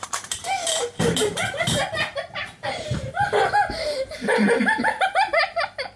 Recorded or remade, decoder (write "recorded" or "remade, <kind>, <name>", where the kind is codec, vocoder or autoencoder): remade, vocoder, BigVGAN v2